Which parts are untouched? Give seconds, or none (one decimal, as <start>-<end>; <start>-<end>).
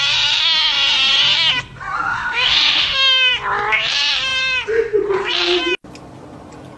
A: 0.0-2.1; 3.3-6.8